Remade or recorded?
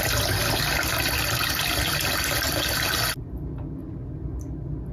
recorded